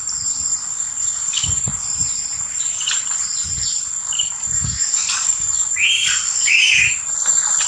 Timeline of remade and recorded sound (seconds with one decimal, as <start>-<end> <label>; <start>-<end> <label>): 0.0-0.5 recorded; 0.5-1.6 remade; 1.6-4.0 recorded; 4.0-6.9 remade; 6.9-7.7 recorded